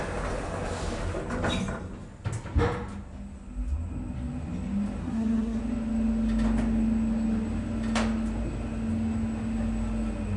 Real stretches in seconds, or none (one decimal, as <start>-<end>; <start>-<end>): 0.0-5.0; 5.6-10.4